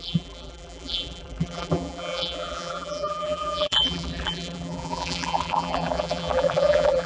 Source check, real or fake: fake